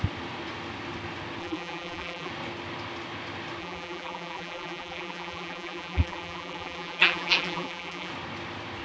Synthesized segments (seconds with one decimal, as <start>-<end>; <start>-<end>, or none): 1.4-2.3; 3.6-8.1